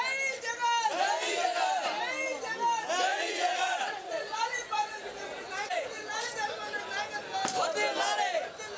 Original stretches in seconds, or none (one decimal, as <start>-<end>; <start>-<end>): 0.0-3.1; 6.3-8.8